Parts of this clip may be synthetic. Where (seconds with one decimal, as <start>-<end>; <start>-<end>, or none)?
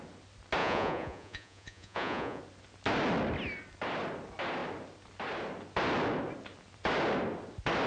0.6-2.4